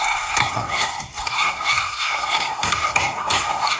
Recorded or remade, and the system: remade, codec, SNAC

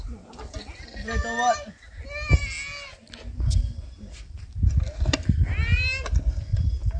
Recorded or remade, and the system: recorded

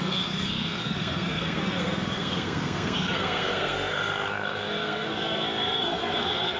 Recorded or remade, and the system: remade, codec, SNAC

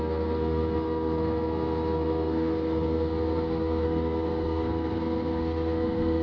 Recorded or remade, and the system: remade, codec, SNAC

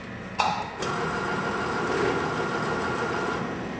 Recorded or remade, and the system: recorded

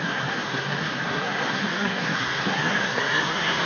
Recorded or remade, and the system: remade, codec, SNAC